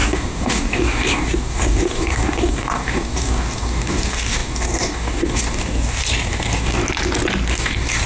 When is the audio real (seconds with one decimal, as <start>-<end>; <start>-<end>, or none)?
6.8-7.5